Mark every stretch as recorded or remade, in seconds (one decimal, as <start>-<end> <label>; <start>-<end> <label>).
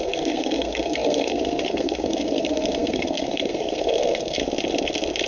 0.0-4.4 remade; 4.4-5.3 recorded